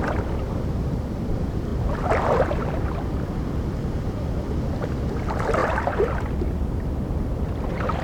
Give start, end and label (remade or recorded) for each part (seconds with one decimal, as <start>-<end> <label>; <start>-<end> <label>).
0.0-1.7 remade; 1.7-4.4 recorded; 4.4-8.0 remade